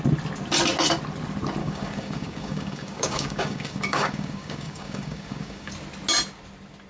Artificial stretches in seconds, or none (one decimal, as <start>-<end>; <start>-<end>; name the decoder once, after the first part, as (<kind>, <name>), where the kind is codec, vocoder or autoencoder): 1.6-5.7 (codec, DAC)

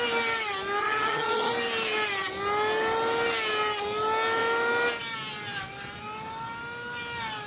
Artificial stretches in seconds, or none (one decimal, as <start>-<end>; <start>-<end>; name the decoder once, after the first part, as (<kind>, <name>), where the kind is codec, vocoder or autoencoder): 0.8-1.5 (vocoder, HiFi-GAN)